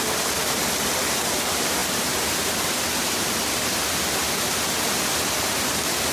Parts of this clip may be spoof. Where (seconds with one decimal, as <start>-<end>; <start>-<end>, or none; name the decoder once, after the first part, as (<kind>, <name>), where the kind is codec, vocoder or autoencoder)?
none